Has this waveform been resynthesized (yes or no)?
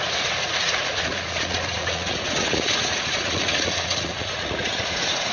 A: yes